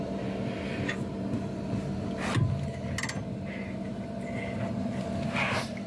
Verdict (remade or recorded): recorded